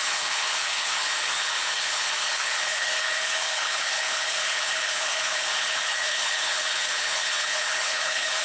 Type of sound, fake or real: fake